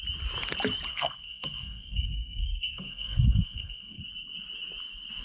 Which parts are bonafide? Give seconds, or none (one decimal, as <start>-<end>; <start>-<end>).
0.0-0.9; 4.0-5.2